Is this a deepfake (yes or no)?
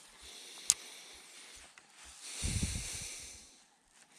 no